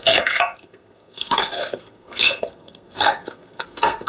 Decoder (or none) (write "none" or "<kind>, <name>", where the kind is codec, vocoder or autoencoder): codec, SNAC